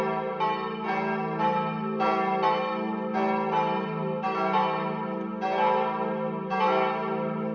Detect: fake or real real